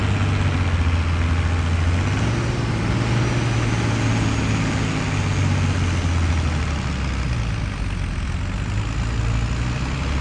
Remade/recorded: recorded